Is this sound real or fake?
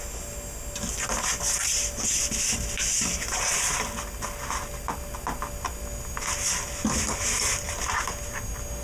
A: real